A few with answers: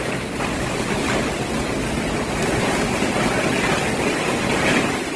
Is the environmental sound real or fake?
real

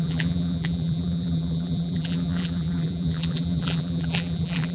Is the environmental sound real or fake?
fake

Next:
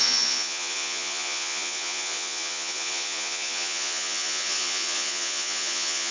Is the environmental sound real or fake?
fake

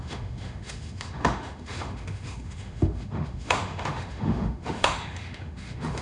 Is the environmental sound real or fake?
fake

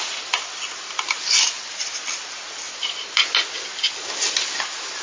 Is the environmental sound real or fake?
real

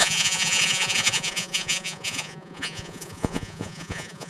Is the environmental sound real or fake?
fake